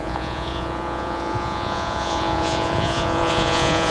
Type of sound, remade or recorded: remade